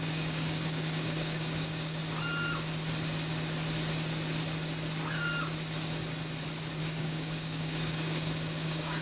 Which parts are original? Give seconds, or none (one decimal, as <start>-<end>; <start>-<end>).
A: 2.0-6.8